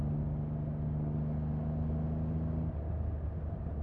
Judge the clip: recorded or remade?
recorded